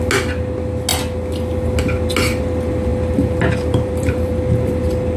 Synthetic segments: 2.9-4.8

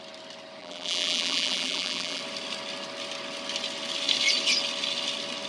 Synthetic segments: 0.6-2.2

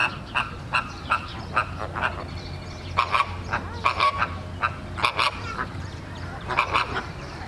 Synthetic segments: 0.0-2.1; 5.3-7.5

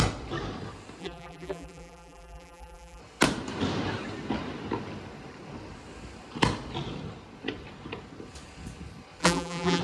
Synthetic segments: 1.0-3.0; 9.2-9.8

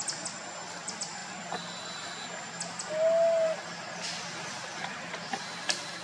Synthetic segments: none